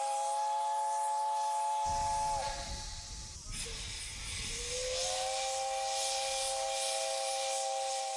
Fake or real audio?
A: real